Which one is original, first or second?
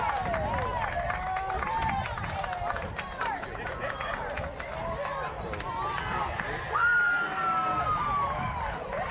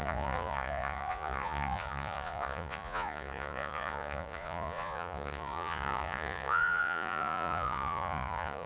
first